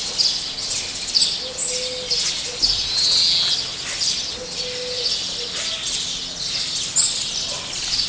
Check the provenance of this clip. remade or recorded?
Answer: recorded